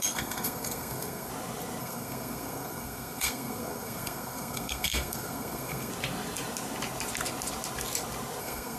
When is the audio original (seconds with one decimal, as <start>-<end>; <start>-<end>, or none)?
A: 1.3-1.8; 5.9-8.4